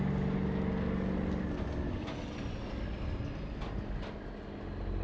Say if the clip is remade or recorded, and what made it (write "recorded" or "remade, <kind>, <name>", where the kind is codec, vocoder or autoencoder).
recorded